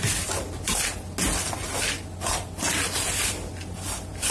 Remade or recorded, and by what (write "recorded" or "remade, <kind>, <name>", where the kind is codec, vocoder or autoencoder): recorded